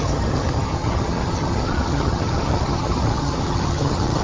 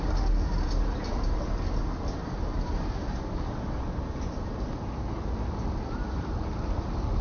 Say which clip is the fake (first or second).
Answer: first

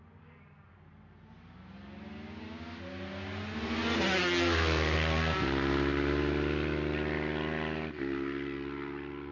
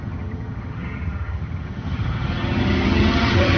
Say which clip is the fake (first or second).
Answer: second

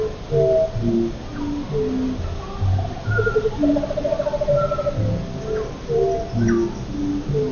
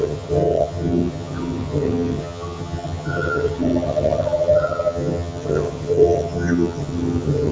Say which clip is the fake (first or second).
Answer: second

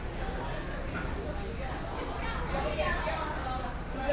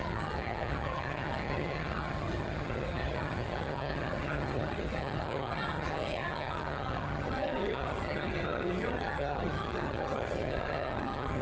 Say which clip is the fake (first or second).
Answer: second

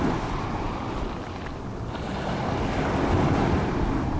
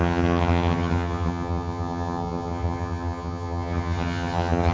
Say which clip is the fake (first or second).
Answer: second